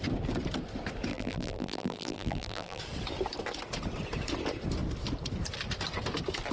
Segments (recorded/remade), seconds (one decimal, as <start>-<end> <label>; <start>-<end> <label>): 0.0-1.1 recorded; 1.1-2.8 remade; 2.8-6.5 recorded